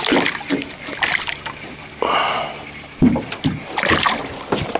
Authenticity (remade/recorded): recorded